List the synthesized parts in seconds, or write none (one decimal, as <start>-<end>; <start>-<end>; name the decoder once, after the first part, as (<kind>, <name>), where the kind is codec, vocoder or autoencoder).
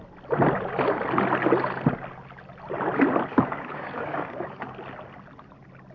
3.3-4.7 (codec, DAC)